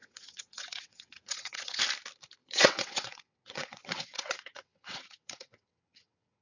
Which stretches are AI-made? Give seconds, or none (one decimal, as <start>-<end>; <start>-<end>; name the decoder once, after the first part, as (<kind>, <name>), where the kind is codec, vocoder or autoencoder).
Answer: 0.0-1.8 (vocoder, WaveNeXt); 2.4-6.4